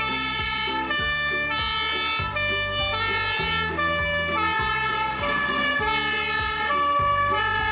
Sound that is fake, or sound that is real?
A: real